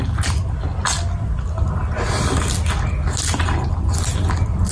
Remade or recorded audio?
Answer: recorded